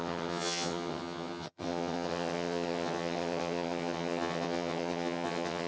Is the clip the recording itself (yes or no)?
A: no